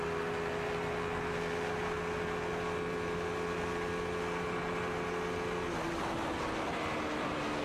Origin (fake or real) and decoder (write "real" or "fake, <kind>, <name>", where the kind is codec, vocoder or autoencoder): real